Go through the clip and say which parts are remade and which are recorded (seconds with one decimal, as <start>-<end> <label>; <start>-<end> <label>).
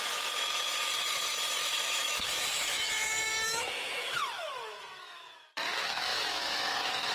0.0-7.1 remade